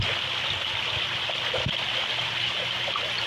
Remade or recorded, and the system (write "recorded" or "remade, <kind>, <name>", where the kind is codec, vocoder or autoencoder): recorded